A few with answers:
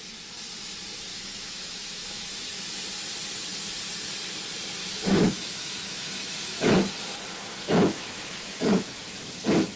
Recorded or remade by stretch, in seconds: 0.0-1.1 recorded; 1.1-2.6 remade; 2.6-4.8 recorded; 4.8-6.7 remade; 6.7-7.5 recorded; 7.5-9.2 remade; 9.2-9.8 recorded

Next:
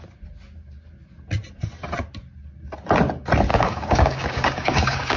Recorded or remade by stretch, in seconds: 0.0-3.5 recorded; 3.5-5.2 remade

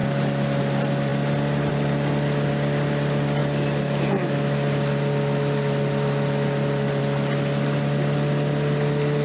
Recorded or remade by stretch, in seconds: 0.0-9.2 recorded

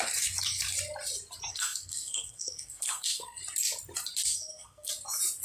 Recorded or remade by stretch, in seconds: 0.0-1.5 recorded; 1.5-3.4 remade; 3.4-4.3 recorded; 4.3-4.9 remade; 4.9-5.4 recorded

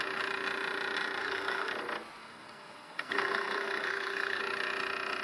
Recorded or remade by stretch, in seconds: 0.0-1.2 recorded; 1.2-1.7 remade; 1.7-2.2 recorded; 2.2-4.4 remade; 4.4-5.2 recorded

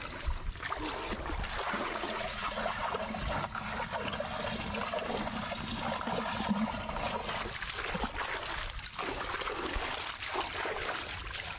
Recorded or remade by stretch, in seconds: 0.0-1.6 recorded; 1.6-3.0 remade; 3.0-11.6 recorded

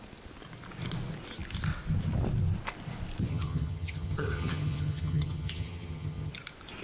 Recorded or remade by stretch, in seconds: 0.0-3.3 recorded; 3.3-6.3 remade; 6.3-6.8 recorded